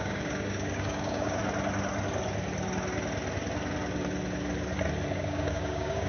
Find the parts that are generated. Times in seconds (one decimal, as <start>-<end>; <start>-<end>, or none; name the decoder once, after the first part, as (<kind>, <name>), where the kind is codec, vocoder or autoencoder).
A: 0.0-1.4 (codec, DAC); 5.1-6.1